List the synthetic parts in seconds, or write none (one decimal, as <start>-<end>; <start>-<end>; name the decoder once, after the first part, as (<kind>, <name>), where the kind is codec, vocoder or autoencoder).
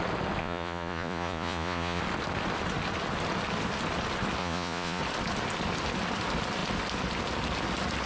0.4-2.0 (vocoder, Vocos); 4.4-5.0